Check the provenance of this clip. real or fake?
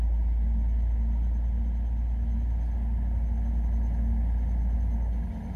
real